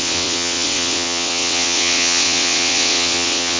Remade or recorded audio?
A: remade